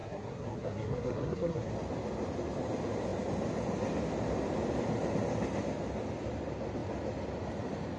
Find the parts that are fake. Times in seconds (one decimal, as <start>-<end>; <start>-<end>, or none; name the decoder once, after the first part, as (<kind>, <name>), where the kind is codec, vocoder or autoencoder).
0.0-1.7 (codec, SNAC)